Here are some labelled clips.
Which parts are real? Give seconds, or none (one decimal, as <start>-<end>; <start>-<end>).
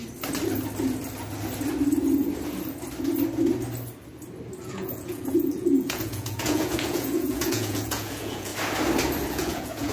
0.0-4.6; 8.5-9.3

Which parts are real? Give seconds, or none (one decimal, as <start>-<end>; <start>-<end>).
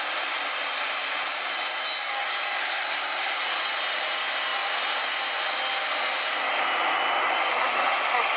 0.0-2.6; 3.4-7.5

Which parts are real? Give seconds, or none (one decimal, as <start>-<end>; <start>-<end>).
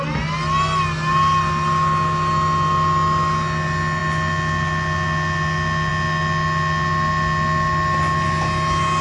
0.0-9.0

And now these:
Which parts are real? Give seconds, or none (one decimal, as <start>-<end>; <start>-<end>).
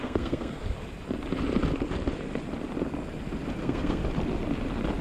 0.6-3.6; 4.0-5.0